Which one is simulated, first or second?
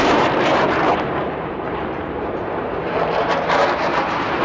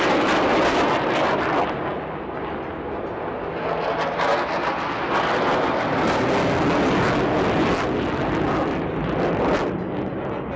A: first